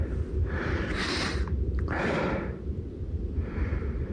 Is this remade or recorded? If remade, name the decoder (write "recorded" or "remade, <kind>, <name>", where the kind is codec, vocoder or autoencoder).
recorded